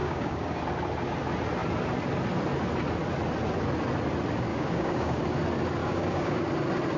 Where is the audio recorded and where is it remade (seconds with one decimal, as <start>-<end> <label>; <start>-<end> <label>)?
0.0-0.6 remade; 0.6-4.5 recorded; 4.5-5.2 remade; 5.2-5.8 recorded; 5.8-6.5 remade; 6.5-7.0 recorded